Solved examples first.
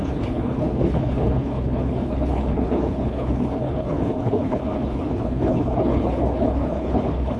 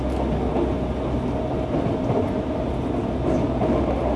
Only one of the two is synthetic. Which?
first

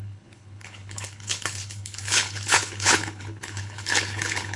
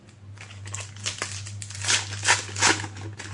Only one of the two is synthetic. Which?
first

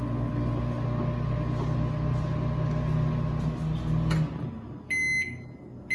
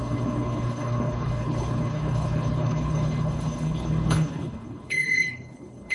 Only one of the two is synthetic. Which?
second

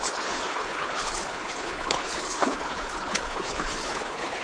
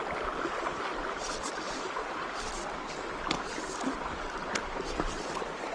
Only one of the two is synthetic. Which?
first